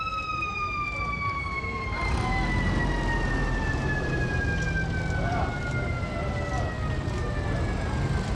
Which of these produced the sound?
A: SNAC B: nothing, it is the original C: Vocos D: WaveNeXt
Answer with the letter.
B